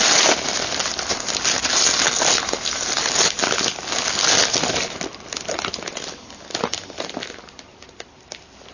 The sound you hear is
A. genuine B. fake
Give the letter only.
A